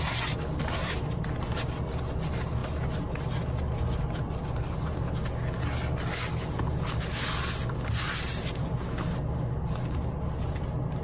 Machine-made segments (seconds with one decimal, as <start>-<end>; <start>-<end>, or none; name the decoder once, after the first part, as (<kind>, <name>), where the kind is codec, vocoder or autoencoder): none